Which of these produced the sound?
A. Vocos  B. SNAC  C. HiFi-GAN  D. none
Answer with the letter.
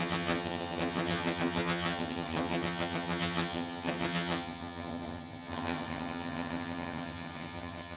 C